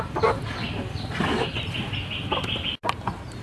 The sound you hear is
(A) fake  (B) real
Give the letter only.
B